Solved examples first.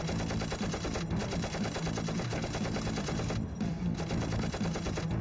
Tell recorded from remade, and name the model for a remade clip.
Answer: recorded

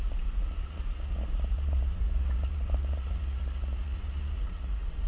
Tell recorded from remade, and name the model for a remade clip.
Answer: remade, vocoder, Vocos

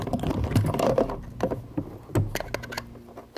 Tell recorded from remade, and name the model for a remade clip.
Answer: recorded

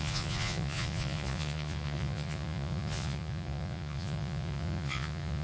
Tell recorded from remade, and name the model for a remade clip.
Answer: remade, vocoder, Vocos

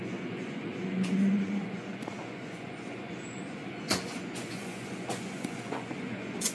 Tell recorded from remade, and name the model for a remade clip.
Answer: remade, vocoder, Vocos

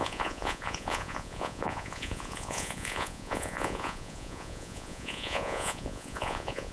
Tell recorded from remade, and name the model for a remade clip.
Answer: remade, vocoder, Vocos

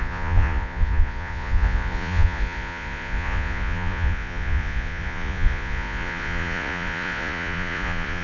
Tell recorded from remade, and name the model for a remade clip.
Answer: remade, vocoder, Vocos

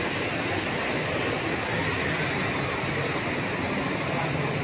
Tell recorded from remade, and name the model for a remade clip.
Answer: recorded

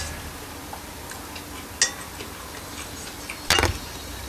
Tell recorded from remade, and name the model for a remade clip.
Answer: recorded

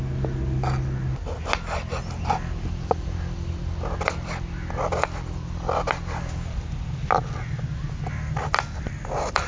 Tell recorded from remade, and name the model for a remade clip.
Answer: recorded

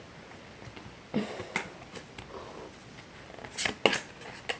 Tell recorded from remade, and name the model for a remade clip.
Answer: recorded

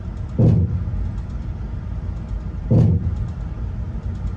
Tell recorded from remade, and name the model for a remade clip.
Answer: recorded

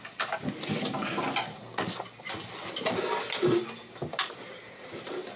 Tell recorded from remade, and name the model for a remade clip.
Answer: recorded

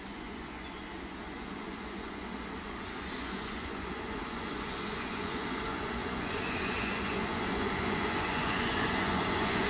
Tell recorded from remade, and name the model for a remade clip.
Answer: remade, vocoder, Vocos